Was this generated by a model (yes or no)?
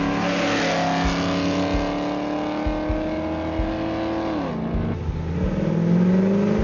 no